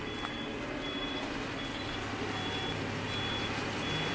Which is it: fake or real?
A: real